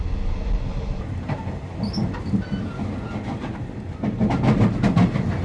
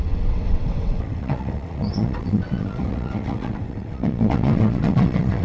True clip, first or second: first